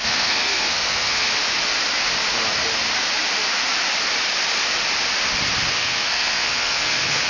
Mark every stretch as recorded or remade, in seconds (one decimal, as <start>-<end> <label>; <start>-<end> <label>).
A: 0.0-1.3 remade; 1.3-5.7 recorded; 5.7-7.3 remade